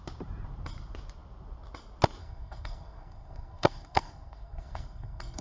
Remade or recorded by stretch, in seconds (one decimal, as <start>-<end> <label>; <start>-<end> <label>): 0.0-2.2 recorded; 2.2-5.4 remade